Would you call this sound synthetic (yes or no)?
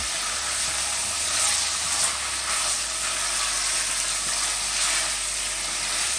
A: no